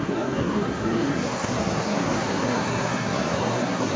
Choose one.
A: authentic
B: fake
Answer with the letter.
B